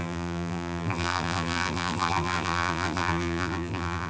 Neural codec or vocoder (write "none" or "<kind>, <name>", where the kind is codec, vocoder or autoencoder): vocoder, BigVGAN v2